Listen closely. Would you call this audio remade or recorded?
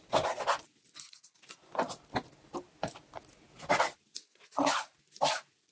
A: recorded